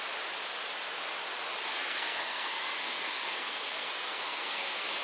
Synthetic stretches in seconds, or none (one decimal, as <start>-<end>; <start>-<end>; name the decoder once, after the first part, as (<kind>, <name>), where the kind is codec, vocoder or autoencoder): 1.7-5.0 (codec, SNAC)